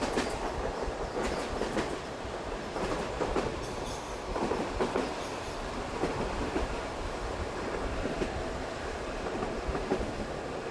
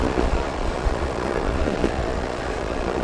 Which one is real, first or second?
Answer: first